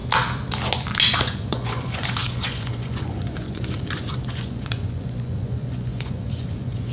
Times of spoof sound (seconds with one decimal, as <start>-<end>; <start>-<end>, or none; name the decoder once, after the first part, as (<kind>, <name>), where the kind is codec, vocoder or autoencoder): 1.2-6.9 (vocoder, Vocos)

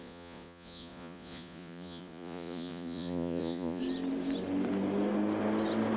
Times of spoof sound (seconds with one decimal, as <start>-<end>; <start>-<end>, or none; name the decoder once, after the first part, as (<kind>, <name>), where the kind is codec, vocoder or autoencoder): 0.0-3.8 (vocoder, Vocos)